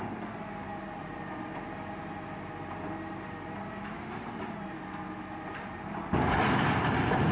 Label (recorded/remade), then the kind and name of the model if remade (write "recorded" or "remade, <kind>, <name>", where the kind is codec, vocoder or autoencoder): remade, vocoder, BigVGAN v2